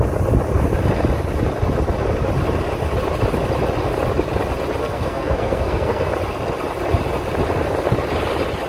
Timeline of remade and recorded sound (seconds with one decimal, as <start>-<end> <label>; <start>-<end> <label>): 0.0-4.8 recorded; 4.8-6.1 remade; 6.1-8.7 recorded